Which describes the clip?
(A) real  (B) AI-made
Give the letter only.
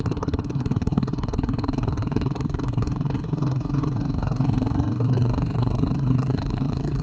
B